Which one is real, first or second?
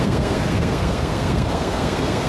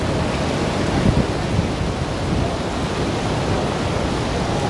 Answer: second